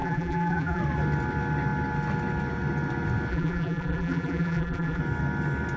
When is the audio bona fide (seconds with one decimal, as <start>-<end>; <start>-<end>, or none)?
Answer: 0.8-3.3; 5.0-5.8